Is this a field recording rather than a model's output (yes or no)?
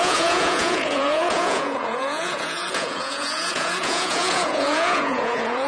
no